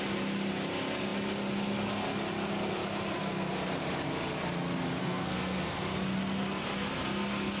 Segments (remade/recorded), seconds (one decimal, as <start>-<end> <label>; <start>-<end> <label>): 0.0-5.0 recorded; 5.0-6.0 remade; 6.0-7.6 recorded